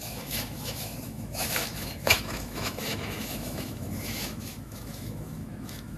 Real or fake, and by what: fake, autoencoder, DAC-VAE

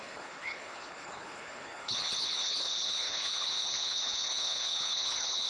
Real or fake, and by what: fake, codec, HILCodec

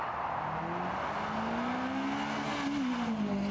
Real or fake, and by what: real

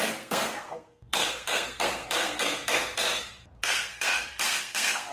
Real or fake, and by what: fake, codec, SNAC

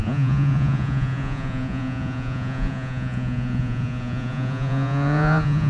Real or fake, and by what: fake, vocoder, Vocos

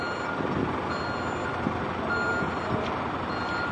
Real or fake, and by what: real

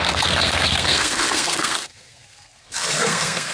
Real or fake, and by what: fake, codec, SNAC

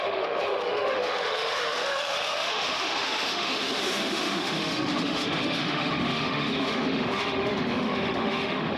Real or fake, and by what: fake, autoencoder, DAC-VAE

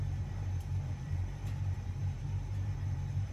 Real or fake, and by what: fake, vocoder, BigVGAN v2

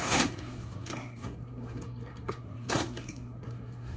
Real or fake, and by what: fake, codec, SNAC